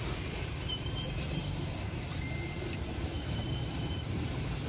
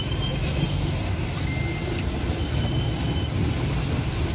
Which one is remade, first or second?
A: first